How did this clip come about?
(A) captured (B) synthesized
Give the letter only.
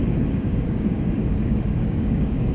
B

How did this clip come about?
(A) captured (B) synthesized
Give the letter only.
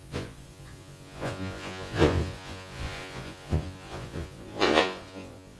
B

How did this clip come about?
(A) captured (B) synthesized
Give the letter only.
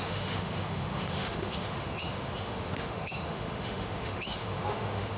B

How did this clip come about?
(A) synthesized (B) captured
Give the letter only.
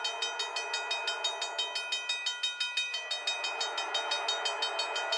B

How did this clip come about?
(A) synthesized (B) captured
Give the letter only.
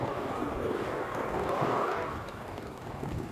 A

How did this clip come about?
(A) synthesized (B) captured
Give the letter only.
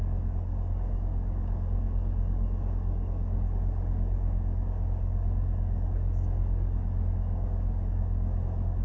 A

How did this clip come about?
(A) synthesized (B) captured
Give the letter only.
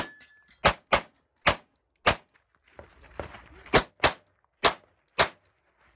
B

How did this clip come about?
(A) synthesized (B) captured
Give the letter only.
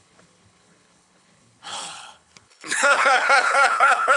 A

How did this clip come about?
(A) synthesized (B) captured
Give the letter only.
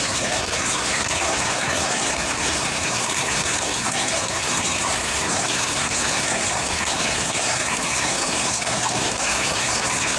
A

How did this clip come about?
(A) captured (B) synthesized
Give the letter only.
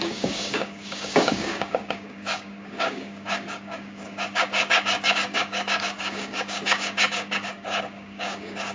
B